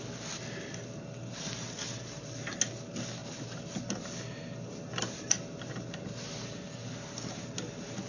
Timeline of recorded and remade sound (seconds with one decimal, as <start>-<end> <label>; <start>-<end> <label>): 0.0-8.1 recorded